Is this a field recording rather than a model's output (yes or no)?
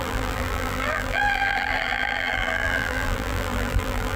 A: no